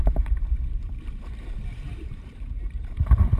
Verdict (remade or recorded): remade